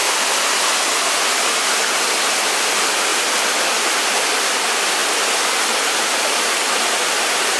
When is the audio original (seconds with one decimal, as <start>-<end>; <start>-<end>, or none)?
0.0-3.1; 3.8-7.6